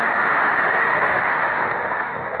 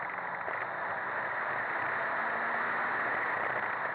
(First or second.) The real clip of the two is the second